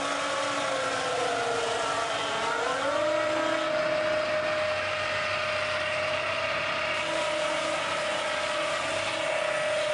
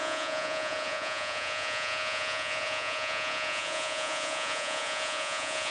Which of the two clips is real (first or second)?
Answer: first